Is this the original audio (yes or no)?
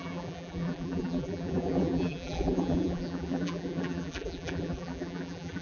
no